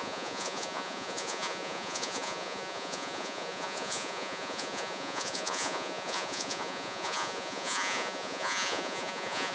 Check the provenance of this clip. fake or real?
fake